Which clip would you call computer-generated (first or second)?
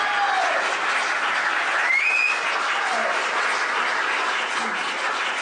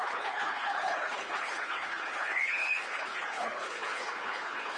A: second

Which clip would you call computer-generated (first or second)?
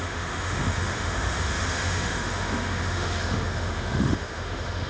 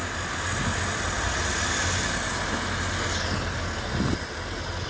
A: first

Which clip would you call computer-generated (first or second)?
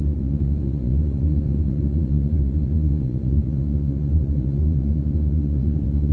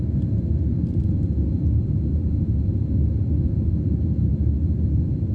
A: first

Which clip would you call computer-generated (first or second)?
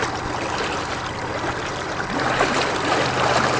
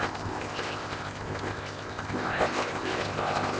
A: second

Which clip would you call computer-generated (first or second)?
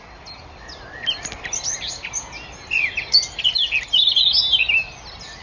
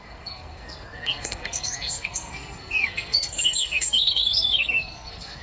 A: second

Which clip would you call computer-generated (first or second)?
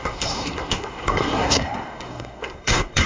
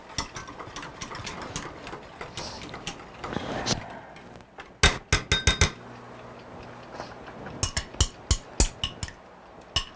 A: first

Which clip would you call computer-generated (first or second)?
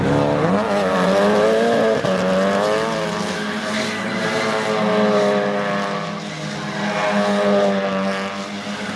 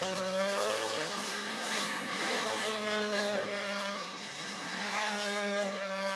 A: second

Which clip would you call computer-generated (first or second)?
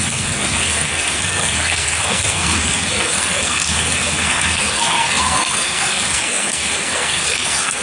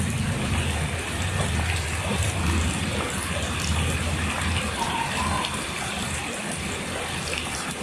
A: first